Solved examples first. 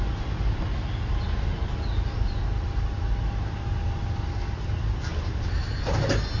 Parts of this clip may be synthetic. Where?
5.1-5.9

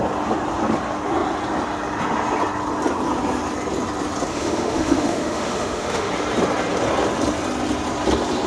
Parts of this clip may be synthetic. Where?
4.3-6.1